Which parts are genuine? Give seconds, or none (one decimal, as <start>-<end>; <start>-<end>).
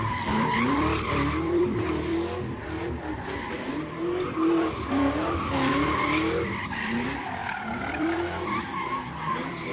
none